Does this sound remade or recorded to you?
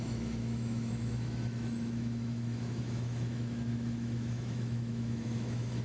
remade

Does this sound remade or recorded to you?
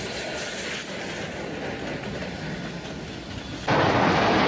recorded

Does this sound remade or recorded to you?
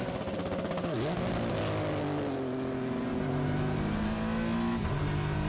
recorded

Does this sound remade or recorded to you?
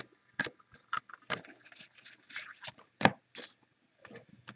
recorded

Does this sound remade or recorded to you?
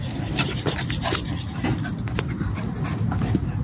recorded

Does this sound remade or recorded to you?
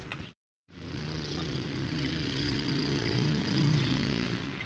remade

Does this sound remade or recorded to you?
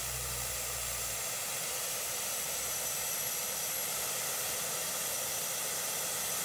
remade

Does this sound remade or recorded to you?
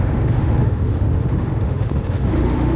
remade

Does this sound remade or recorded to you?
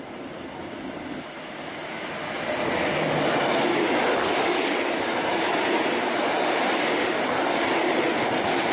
recorded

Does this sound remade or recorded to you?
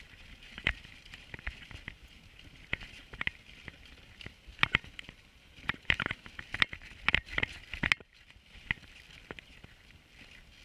recorded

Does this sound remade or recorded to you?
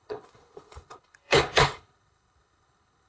remade